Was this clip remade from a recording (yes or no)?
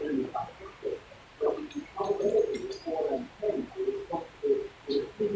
yes